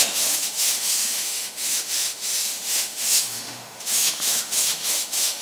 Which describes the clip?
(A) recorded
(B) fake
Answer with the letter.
B